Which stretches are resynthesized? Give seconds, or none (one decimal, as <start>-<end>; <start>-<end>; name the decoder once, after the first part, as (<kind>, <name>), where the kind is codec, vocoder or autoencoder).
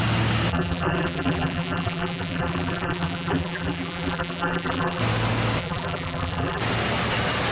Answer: 0.5-5.0 (vocoder, BigVGAN v2); 5.6-6.6